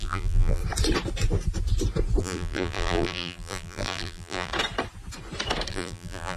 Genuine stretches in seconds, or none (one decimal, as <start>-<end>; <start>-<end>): 0.6-2.2; 4.5-5.7

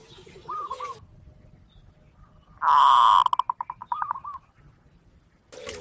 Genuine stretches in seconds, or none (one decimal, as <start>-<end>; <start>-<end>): 0.0-5.8

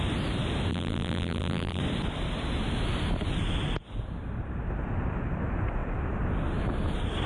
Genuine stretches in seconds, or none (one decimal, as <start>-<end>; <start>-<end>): 0.0-0.7; 1.8-7.3